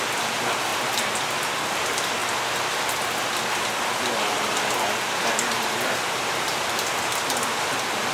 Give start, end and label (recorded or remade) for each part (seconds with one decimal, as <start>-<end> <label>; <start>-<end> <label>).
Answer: 0.0-0.7 remade; 0.7-1.6 recorded; 1.6-2.2 remade; 2.2-4.1 recorded; 4.1-8.1 remade